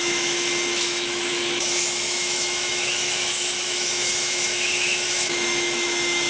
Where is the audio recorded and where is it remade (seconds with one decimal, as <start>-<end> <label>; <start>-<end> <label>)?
0.0-6.3 remade